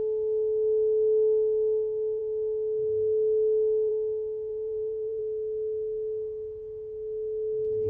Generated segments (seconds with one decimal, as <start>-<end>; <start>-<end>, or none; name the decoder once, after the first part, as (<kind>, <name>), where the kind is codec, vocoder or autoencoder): 4.5-5.2 (vocoder, BigVGAN v2)

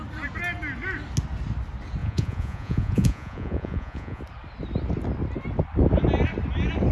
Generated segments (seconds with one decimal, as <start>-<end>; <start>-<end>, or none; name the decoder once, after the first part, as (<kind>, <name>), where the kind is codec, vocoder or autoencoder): 2.0-4.2 (vocoder, Vocos)

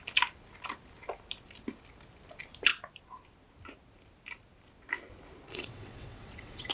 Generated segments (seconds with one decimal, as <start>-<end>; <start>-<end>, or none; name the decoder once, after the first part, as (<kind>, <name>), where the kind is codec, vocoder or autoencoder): 5.5-6.7 (vocoder, WaveNeXt)